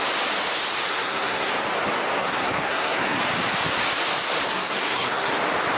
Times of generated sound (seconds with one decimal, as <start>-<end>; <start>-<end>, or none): 0.9-1.5; 2.2-3.2; 4.5-5.3

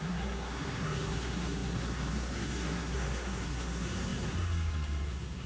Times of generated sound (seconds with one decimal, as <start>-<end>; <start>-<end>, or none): 0.0-5.5